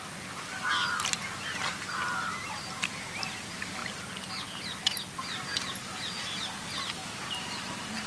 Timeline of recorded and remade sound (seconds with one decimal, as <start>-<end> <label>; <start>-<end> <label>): 0.0-3.8 recorded; 3.8-4.3 remade; 4.3-5.8 recorded; 5.8-6.6 remade; 6.6-7.0 recorded; 7.0-8.1 remade